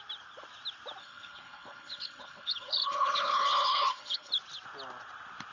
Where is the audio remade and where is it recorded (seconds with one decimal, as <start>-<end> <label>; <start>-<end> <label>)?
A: 0.0-1.0 recorded; 1.0-4.3 remade; 4.3-5.5 recorded